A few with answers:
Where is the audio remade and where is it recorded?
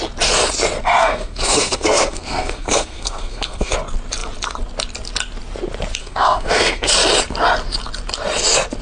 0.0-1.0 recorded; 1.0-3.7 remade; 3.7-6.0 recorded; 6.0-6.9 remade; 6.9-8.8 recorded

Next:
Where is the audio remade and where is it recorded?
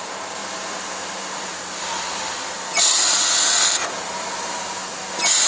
0.0-0.4 remade; 0.4-3.7 recorded; 3.7-4.8 remade; 4.8-5.5 recorded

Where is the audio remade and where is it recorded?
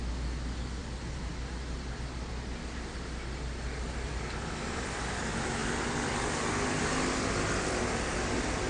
0.0-8.7 recorded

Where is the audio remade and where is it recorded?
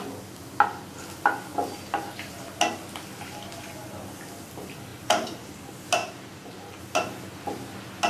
0.0-4.9 recorded; 4.9-5.5 remade; 5.5-6.0 recorded; 6.0-6.8 remade; 6.8-8.1 recorded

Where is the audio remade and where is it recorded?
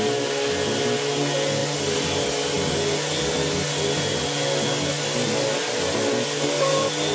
0.0-7.1 recorded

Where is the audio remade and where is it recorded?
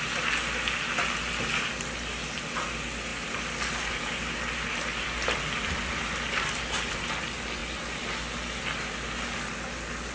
0.0-10.1 recorded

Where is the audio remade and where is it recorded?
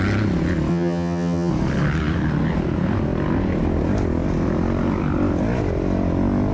0.0-0.7 recorded; 0.7-1.5 remade; 1.5-6.5 recorded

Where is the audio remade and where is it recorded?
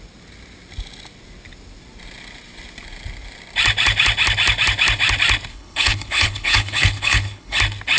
0.0-5.5 recorded; 5.5-7.6 remade; 7.6-8.0 recorded